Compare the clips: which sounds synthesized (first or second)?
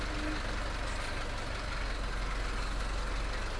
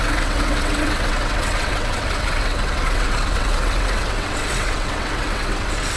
second